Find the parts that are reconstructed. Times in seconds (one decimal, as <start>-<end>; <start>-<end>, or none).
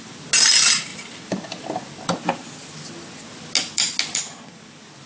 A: none